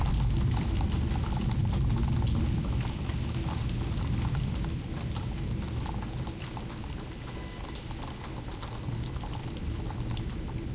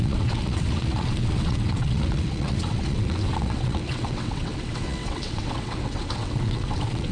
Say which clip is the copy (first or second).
second